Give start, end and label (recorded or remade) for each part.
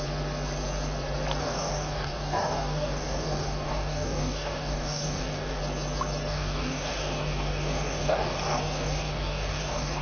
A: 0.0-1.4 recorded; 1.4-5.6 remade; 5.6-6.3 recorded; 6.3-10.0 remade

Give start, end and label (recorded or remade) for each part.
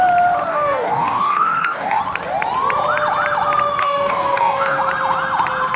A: 0.0-0.5 recorded; 0.5-2.0 remade; 2.0-3.8 recorded; 3.8-4.8 remade; 4.8-5.8 recorded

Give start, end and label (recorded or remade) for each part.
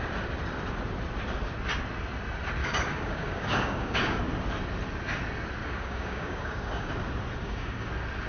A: 0.0-2.6 recorded; 2.6-4.2 remade; 4.2-5.6 recorded; 5.6-6.9 remade; 6.9-7.4 recorded; 7.4-7.9 remade; 7.9-8.3 recorded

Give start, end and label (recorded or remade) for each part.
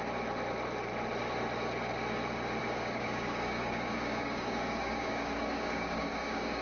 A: 0.0-2.6 recorded; 2.6-6.6 remade